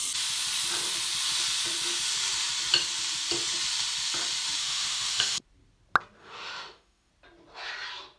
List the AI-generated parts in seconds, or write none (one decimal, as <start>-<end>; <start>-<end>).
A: 4.6-5.4; 6.2-7.1